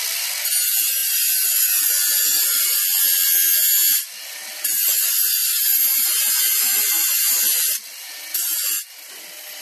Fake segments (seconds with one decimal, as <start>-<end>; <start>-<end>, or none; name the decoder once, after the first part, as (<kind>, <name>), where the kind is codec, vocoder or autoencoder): 1.0-1.5 (vocoder, BigVGAN v2); 2.3-2.8; 5.4-7.1